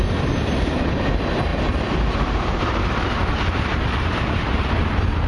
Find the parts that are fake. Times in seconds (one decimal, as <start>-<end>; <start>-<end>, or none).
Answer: 1.5-4.7